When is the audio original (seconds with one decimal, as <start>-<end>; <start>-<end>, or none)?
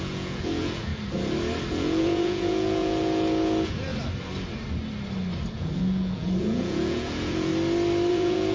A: 0.9-1.7; 3.9-5.5; 7.5-8.1